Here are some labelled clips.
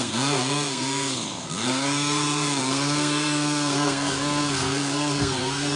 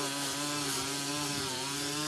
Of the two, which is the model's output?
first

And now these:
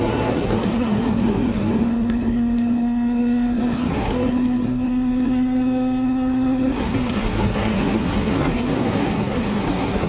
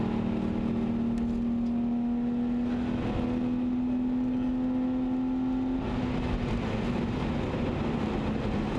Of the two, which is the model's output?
first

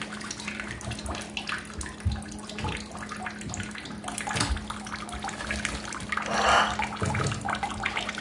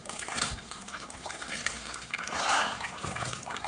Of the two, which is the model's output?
second